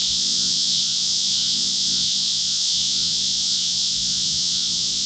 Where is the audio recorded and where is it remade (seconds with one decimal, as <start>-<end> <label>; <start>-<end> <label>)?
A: 0.0-5.1 remade